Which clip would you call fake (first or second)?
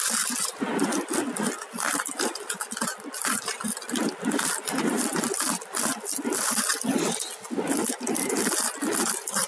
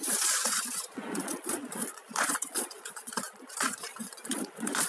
second